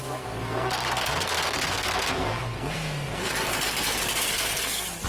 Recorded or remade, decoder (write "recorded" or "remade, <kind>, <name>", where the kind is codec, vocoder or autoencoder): remade, codec, SNAC